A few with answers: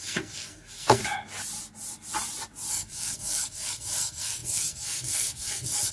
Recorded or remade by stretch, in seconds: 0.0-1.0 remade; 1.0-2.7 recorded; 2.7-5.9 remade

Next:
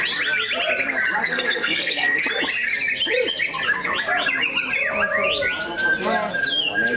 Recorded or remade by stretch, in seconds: 0.0-1.2 recorded; 1.2-2.2 remade; 2.2-7.0 recorded

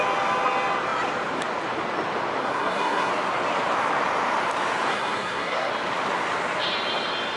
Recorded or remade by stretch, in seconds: 0.0-2.4 recorded; 2.4-3.1 remade; 3.1-4.9 recorded; 4.9-5.7 remade; 5.7-7.4 recorded